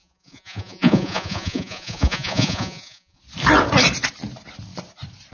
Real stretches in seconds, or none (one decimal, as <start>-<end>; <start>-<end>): 3.2-5.3